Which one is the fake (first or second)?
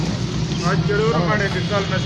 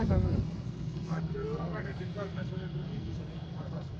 second